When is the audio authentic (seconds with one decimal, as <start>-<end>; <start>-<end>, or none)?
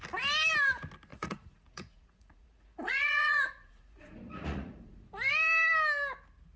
0.0-1.1; 5.1-6.6